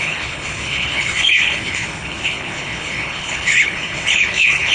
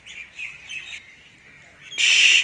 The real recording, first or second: second